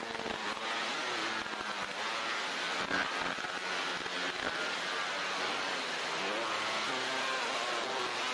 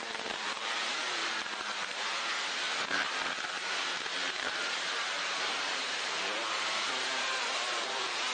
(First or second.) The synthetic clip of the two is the second